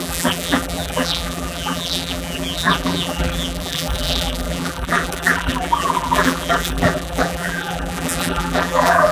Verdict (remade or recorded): remade